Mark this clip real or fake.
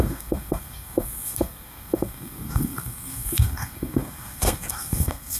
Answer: fake